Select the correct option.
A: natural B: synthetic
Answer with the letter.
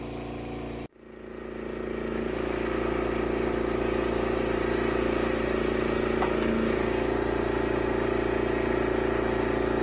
A